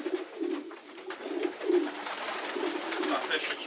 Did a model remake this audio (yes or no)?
no